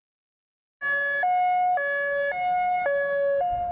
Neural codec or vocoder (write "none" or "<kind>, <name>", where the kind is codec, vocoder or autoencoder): none